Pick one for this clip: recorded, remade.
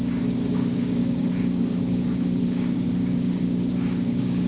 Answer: remade